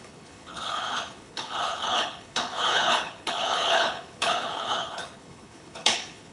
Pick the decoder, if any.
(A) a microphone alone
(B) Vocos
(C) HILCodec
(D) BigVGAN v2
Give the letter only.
C